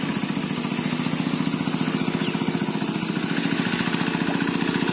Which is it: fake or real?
real